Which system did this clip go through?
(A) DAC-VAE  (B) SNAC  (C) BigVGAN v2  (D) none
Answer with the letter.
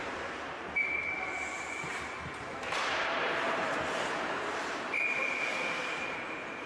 C